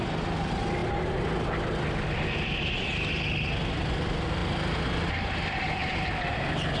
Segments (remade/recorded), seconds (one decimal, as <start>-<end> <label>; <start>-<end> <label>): 0.0-6.8 recorded